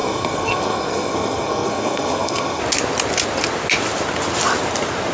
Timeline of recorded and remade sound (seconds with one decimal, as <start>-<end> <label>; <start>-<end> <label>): 0.0-2.6 remade; 2.6-5.1 recorded